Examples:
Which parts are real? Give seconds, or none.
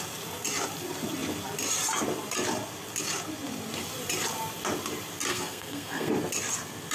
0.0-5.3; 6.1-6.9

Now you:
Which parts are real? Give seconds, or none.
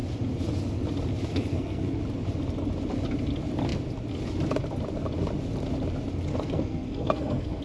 0.0-1.3; 2.0-6.3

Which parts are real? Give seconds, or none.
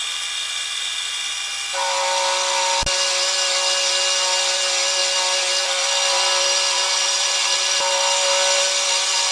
0.0-9.3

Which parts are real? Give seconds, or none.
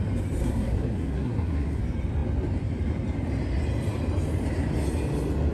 0.0-0.4; 1.8-5.5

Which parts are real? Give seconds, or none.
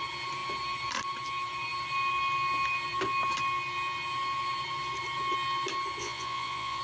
0.0-6.0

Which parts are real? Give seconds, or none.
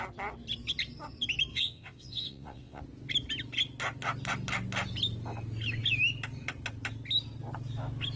0.0-1.5; 2.8-8.2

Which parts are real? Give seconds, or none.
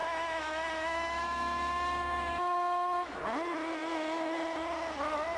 3.2-5.4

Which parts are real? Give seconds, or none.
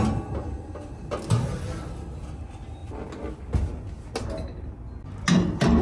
0.0-5.8